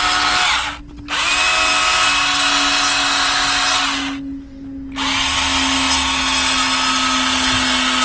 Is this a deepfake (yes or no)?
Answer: no